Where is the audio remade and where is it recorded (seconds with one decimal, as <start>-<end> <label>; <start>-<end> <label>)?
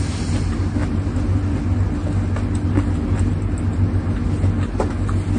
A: 0.0-5.4 recorded